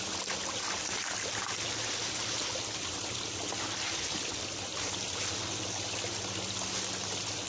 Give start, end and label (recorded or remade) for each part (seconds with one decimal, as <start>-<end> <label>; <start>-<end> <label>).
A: 0.0-7.5 recorded